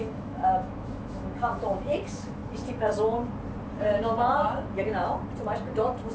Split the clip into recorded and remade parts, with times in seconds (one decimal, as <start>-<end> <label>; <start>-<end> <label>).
0.0-2.4 remade; 2.4-6.1 recorded